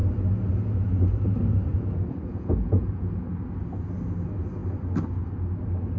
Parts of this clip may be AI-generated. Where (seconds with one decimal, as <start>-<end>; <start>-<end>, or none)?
1.7-3.3

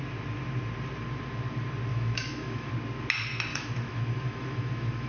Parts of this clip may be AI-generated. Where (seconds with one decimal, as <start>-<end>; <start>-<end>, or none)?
1.9-2.7; 3.5-5.1

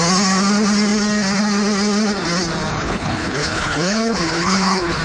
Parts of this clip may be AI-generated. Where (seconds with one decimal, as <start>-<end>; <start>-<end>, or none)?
2.7-5.0

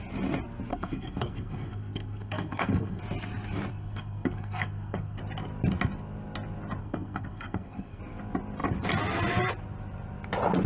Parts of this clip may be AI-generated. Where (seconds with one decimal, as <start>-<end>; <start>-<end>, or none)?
0.7-3.0; 3.7-5.2; 6.8-8.0

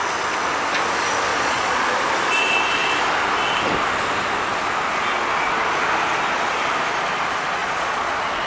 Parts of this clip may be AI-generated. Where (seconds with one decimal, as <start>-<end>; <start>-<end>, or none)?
1.3-1.9; 7.6-8.5

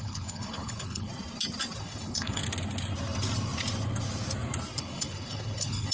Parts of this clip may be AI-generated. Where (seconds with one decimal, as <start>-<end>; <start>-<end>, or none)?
0.0-1.1; 1.8-2.4; 4.8-5.9